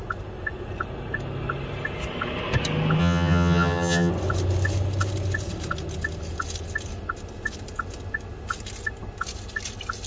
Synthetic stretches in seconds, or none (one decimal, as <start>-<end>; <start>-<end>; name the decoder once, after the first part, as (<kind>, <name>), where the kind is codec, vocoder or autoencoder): 3.0-4.1 (vocoder, HiFi-GAN)